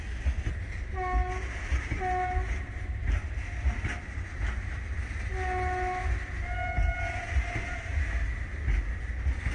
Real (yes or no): yes